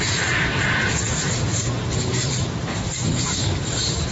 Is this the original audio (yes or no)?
no